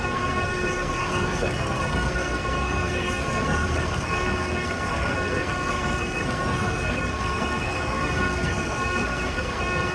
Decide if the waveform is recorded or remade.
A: remade